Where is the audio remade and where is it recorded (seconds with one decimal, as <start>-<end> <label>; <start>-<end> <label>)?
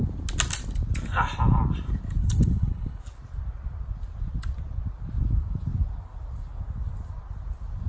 0.0-2.2 recorded; 2.2-3.0 remade; 3.0-7.9 recorded